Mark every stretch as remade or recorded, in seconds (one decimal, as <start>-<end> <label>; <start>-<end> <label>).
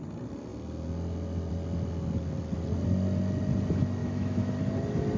0.0-4.0 recorded; 4.0-4.5 remade; 4.5-5.2 recorded